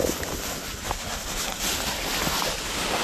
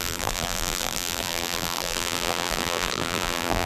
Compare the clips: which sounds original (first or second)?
first